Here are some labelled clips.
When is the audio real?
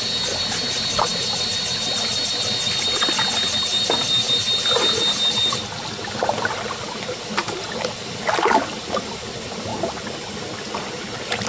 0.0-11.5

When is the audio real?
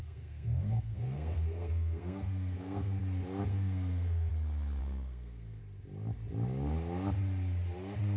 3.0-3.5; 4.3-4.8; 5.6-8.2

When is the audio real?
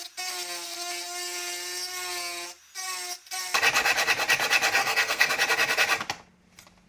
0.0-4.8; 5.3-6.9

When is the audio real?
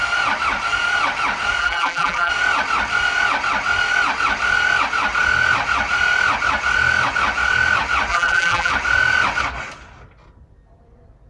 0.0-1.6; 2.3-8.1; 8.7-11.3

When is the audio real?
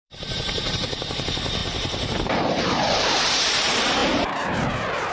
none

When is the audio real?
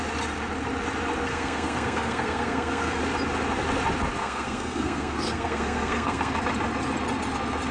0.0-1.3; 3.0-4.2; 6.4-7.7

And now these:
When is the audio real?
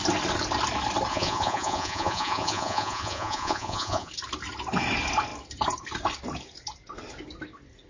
0.0-1.1; 4.1-7.9